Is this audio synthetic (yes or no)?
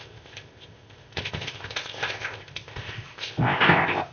yes